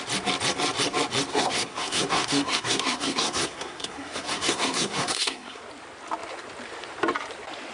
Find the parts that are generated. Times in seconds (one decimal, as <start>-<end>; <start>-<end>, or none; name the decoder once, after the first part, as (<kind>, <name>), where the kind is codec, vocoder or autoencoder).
1.3-5.6 (codec, SNAC)